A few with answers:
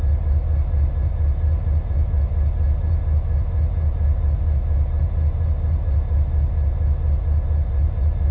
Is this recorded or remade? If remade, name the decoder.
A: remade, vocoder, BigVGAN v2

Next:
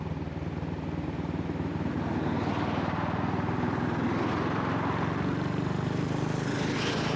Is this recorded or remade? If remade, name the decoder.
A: recorded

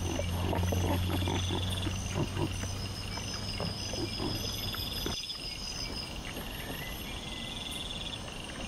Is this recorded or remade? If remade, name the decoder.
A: recorded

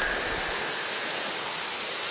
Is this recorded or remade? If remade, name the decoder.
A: recorded